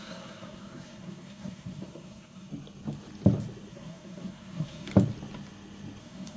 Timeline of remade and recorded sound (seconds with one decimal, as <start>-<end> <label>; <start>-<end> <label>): 0.0-2.5 remade; 2.5-3.7 recorded; 3.7-4.9 remade; 4.9-6.0 recorded; 6.0-6.4 remade